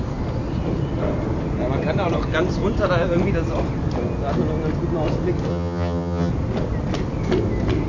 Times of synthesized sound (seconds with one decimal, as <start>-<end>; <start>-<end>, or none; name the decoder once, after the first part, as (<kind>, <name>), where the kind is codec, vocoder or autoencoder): 5.5-6.3 (vocoder, HiFi-GAN)